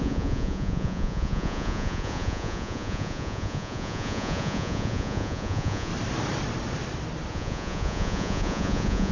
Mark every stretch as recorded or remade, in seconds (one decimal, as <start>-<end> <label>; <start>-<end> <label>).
0.0-5.9 remade; 5.9-7.3 recorded; 7.3-9.1 remade